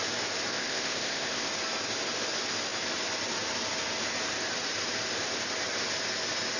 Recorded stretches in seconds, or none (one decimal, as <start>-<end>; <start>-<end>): 0.0-0.5; 1.5-6.6